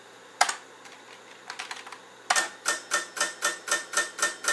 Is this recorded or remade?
recorded